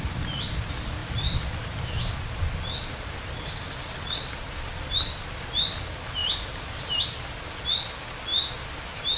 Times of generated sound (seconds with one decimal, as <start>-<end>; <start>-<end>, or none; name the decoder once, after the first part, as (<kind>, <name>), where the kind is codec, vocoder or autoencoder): 1.0-2.1 (vocoder, BigVGAN v2); 6.2-7.0